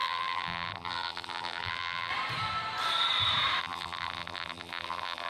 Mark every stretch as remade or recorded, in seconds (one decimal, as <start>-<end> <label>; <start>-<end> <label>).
0.0-2.1 remade; 2.1-3.6 recorded; 3.6-5.3 remade